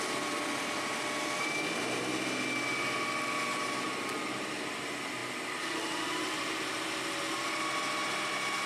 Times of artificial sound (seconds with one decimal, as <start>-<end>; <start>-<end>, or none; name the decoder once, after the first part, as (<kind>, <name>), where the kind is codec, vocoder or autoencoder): none